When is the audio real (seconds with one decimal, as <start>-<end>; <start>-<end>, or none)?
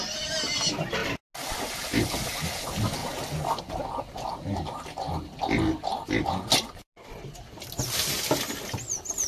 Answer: 0.0-9.3